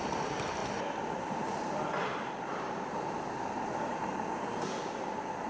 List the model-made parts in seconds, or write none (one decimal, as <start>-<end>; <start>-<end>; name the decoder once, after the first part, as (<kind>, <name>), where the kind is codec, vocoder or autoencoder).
0.6-1.8 (vocoder, BigVGAN v2); 2.5-4.3